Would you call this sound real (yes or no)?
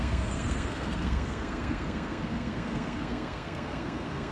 no